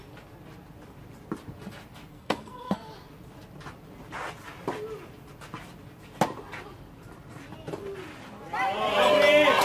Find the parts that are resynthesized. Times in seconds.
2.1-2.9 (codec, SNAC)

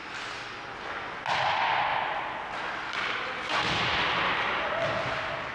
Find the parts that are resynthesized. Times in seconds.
none

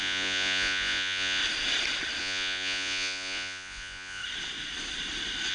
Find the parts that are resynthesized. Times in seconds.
0.0-1.4 (vocoder, Vocos); 2.2-4.2

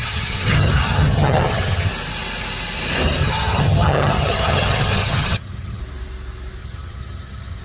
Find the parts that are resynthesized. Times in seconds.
0.0-1.9 (vocoder, HiFi-GAN); 3.2-5.8; 6.6-7.6